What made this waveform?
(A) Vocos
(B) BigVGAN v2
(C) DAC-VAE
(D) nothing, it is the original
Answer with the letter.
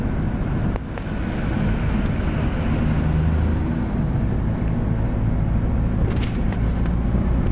D